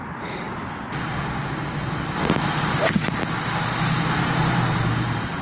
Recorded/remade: recorded